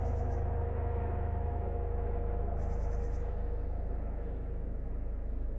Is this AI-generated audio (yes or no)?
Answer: yes